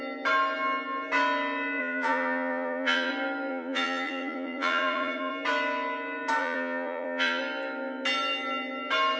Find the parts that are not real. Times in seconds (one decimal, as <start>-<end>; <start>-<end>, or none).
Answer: 1.8-3.1; 3.5-5.3; 6.4-7.4

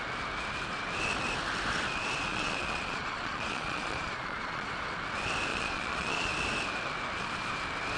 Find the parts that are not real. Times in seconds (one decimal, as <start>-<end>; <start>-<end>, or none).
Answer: 2.3-4.7; 5.5-6.3

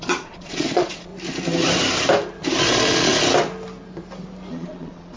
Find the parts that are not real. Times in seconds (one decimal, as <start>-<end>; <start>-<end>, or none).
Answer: 0.0-1.1; 2.6-3.1; 4.5-5.2

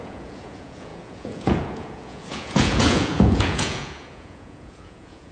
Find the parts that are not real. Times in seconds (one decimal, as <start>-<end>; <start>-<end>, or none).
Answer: 0.0-5.3

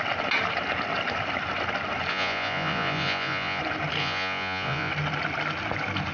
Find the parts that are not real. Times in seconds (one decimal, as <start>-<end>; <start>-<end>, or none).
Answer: 2.1-3.6; 4.0-4.9

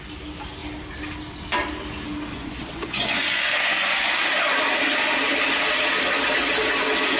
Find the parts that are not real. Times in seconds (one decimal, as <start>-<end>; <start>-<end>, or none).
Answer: 2.3-4.2